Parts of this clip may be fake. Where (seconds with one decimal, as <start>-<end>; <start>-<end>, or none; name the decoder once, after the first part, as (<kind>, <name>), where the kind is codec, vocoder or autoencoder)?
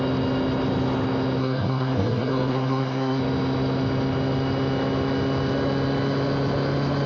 1.4-3.2 (codec, SNAC)